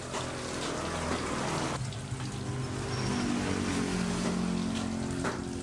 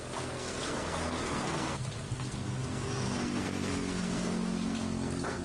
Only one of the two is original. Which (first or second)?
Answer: first